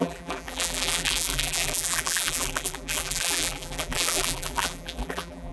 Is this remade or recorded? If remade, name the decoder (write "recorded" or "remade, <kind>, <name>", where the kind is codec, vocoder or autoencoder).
remade, vocoder, BigVGAN v2